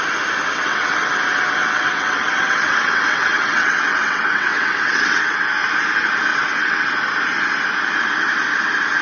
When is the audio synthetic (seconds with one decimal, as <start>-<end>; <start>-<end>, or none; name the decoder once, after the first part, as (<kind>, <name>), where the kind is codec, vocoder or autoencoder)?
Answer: 0.5-1.1 (vocoder, WaveNeXt); 1.6-5.4; 6.3-6.9